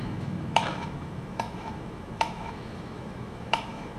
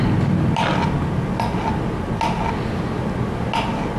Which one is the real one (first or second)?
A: second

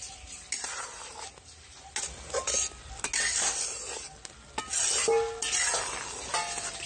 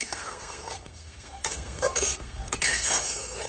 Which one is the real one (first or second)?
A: first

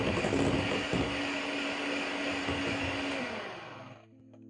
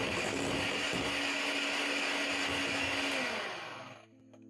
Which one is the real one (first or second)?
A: second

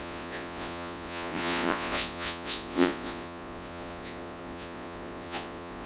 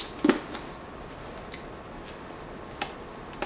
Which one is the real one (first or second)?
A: second